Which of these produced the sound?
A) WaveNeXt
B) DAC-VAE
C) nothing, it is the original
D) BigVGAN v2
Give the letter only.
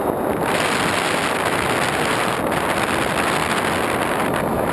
C